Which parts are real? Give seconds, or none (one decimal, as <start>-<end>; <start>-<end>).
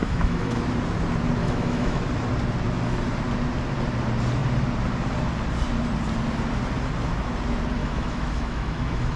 0.6-1.4; 2.0-7.8